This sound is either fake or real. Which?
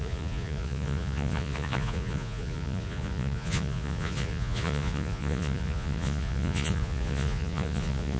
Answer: fake